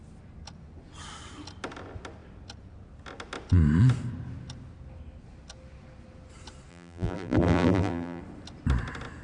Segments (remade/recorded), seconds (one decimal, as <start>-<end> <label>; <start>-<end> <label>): 0.0-6.7 recorded; 6.7-8.2 remade; 8.2-9.2 recorded